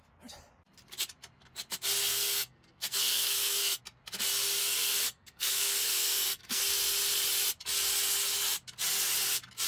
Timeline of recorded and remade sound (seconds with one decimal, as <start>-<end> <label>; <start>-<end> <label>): 0.0-2.1 recorded; 2.1-3.8 remade; 3.8-4.6 recorded; 4.6-6.6 remade; 6.6-9.7 recorded